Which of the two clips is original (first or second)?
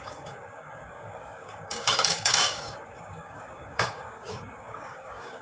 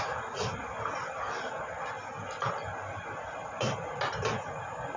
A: second